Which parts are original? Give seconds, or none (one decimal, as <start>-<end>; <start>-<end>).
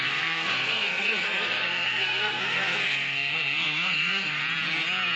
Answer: 4.4-5.2